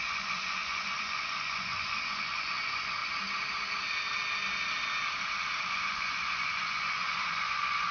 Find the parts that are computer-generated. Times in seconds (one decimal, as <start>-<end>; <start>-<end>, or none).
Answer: 0.0-3.0; 5.6-7.9